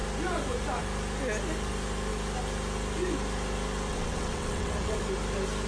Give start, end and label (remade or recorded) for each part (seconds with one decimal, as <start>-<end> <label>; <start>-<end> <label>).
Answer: 0.0-3.9 recorded; 3.9-5.0 remade; 5.0-5.7 recorded